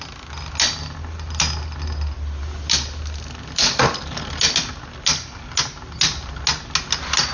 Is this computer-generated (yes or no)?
no